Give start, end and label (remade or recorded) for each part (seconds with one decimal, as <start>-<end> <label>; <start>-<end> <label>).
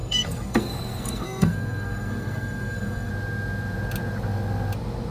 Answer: 0.0-3.1 remade; 3.1-5.1 recorded